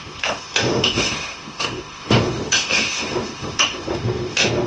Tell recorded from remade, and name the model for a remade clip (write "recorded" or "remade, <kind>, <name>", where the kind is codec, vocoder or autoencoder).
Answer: remade, autoencoder, DAC-VAE